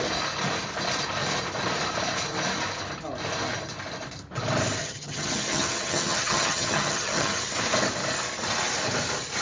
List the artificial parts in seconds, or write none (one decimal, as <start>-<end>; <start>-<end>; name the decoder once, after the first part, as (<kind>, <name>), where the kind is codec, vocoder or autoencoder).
4.8-7.4 (vocoder, HiFi-GAN)